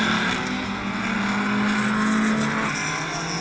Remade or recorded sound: recorded